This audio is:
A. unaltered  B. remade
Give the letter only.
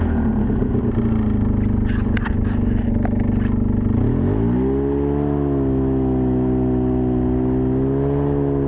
A